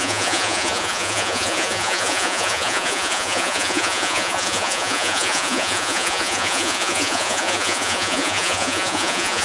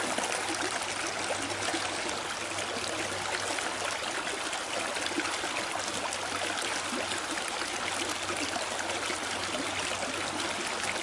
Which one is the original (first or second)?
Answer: second